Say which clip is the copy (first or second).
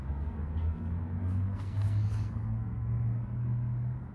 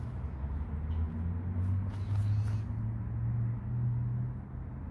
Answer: first